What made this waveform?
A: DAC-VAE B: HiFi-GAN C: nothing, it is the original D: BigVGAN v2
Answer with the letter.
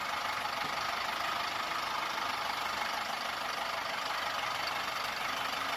C